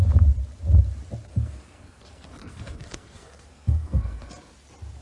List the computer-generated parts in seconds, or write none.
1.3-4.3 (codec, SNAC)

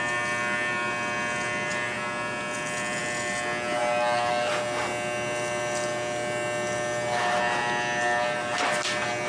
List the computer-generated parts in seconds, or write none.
none

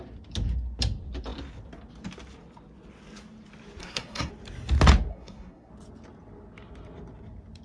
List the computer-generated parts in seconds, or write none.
3.8-4.3 (codec, SNAC); 5.1-5.7

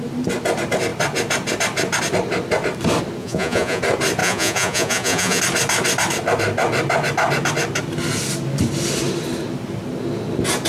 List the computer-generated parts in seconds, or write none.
3.2-3.8 (vocoder, Vocos); 4.2-5.4

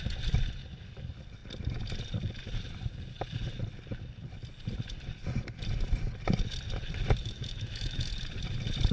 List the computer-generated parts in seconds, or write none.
7.2-8.1 (autoencoder, DAC-VAE)

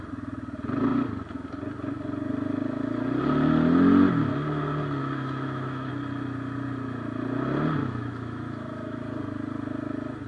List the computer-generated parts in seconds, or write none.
5.0-5.9 (autoencoder, DAC-VAE); 7.8-9.0